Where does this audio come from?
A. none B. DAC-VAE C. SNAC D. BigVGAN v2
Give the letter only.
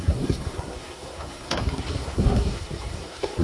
C